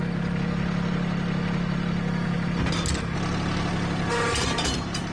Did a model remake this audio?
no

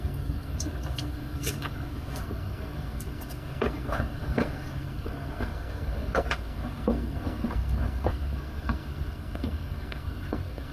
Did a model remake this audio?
yes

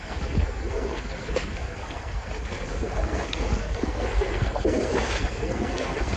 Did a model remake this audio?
yes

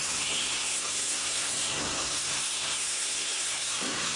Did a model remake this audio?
yes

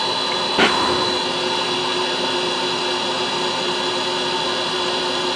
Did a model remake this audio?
no